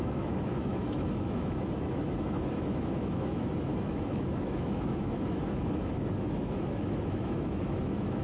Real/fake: fake